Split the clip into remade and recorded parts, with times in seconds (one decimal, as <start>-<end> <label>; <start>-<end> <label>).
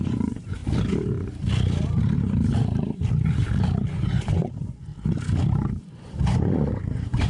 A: 0.0-0.6 remade; 0.6-3.9 recorded; 3.9-4.9 remade; 4.9-5.8 recorded; 5.8-7.3 remade